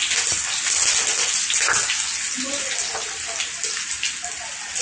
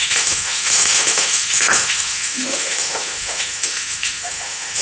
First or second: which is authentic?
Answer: first